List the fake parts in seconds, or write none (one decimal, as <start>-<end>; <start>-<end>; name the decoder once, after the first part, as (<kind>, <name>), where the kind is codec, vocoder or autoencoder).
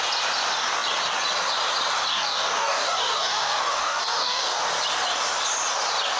2.1-4.6 (codec, DAC)